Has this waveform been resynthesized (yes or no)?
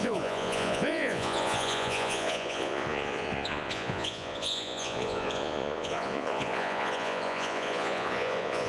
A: yes